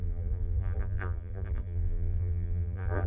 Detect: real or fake fake